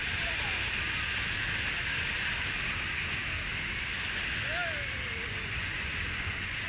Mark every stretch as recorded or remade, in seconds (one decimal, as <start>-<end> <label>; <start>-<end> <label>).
0.0-5.2 recorded; 5.2-6.7 remade